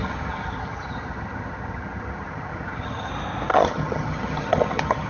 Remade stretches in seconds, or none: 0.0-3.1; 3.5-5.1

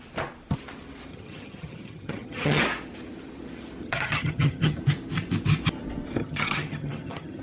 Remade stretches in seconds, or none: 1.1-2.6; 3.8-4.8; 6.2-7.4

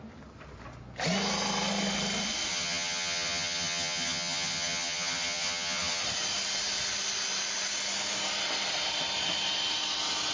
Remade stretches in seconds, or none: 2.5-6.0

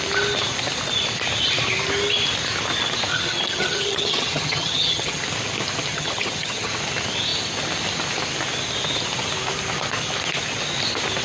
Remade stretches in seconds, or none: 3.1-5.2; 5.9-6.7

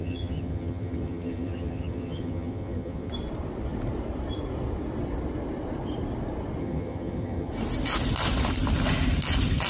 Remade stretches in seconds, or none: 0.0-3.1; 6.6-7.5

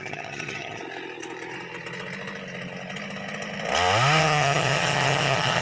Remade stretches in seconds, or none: 0.0-0.8; 4.2-5.6